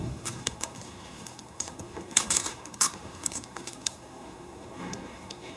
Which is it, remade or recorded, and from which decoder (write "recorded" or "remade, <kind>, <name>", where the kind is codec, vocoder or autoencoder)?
remade, codec, SNAC